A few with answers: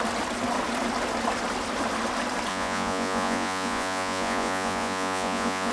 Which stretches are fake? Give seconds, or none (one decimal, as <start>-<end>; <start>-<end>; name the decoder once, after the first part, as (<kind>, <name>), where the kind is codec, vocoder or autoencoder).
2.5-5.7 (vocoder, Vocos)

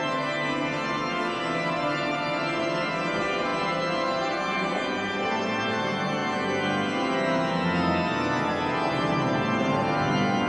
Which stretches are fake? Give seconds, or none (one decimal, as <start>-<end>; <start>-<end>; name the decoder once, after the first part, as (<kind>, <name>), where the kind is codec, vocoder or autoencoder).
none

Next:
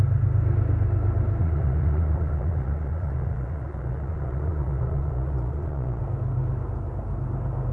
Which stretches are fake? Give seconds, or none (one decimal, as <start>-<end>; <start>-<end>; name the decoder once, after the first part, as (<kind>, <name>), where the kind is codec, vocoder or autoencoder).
1.4-6.0 (vocoder, Vocos)

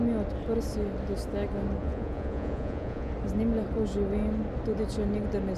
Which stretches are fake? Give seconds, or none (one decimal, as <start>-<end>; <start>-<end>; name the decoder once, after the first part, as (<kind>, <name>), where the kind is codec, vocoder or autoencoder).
1.8-3.1 (vocoder, Vocos)

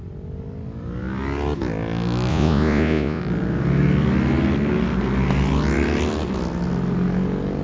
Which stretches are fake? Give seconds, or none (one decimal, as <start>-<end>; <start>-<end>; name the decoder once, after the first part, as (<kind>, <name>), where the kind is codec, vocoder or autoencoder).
2.3-3.2 (vocoder, Vocos)

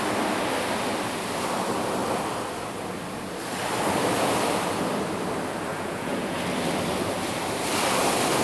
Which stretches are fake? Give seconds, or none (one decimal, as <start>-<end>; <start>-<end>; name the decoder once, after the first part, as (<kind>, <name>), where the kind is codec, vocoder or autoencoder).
5.7-6.4 (vocoder, Vocos)